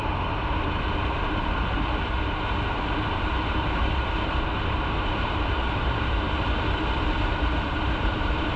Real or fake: fake